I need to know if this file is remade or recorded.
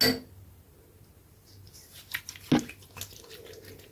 recorded